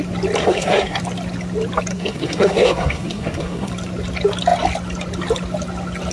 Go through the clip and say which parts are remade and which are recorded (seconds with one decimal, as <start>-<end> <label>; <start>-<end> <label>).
0.0-0.4 recorded; 0.4-1.0 remade; 1.0-1.9 recorded; 1.9-3.7 remade; 3.7-6.1 recorded